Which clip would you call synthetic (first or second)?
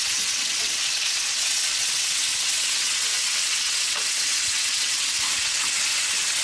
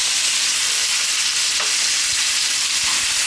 first